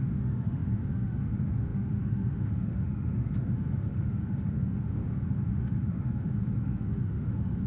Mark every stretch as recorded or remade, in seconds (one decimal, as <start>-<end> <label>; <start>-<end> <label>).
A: 0.0-7.7 remade